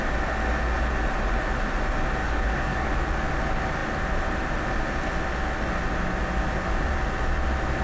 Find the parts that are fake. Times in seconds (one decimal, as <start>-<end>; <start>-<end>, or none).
2.2-2.9